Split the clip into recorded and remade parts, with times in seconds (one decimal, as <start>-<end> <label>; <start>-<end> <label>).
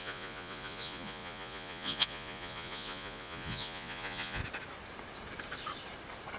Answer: 0.0-4.4 remade; 4.4-6.4 recorded